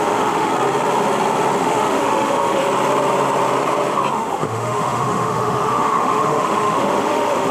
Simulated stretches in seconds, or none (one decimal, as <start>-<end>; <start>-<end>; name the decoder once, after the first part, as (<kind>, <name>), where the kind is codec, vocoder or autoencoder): 0.0-0.5 (autoencoder, DAC-VAE); 1.6-2.6; 4.1-7.5